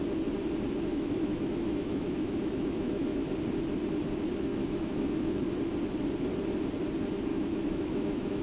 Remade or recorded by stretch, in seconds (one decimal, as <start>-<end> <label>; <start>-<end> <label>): 0.0-0.9 recorded; 0.9-3.3 remade; 3.3-4.5 recorded; 4.5-5.4 remade; 5.4-7.3 recorded; 7.3-8.4 remade